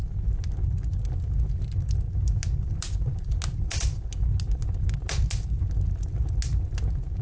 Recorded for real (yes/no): yes